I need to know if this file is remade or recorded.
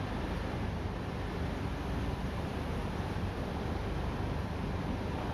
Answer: recorded